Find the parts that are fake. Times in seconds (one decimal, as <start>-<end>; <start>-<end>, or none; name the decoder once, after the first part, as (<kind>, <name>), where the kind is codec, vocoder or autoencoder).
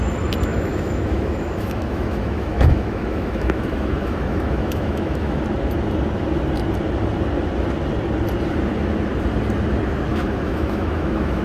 0.5-5.4 (autoencoder, DAC-VAE); 10.1-11.4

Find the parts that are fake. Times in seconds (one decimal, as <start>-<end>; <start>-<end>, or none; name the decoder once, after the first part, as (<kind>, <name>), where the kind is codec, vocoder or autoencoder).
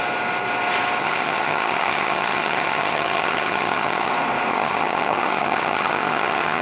1.0-4.1 (vocoder, HiFi-GAN); 4.5-6.6